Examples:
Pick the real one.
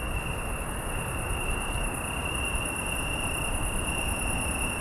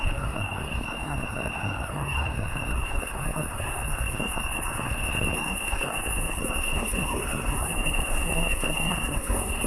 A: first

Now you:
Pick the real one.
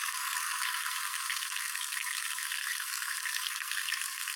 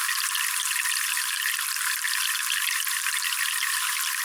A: second